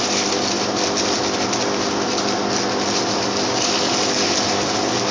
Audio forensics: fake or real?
real